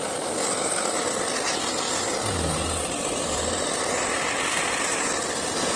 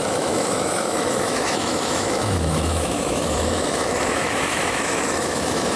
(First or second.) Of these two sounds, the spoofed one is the second